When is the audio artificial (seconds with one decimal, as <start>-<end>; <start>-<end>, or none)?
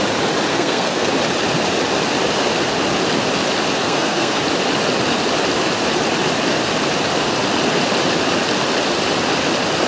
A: 0.5-1.1; 3.8-4.4